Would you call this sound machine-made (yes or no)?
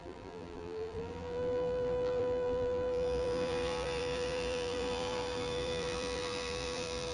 yes